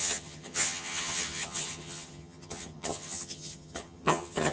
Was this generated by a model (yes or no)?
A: yes